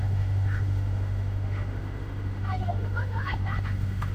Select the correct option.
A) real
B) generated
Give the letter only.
B